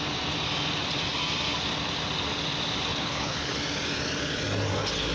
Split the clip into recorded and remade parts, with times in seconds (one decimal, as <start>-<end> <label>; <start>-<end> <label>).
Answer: 0.0-2.9 recorded; 2.9-3.5 remade; 3.5-5.1 recorded